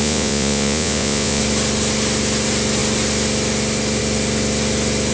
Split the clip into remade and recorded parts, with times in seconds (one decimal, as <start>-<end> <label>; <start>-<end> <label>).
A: 0.0-1.4 remade; 1.4-5.1 recorded